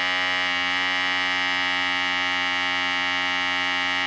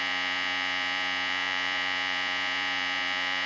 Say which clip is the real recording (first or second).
first